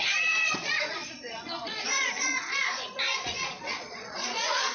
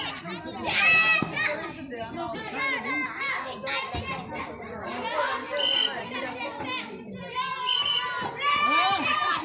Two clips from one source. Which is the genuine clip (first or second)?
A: second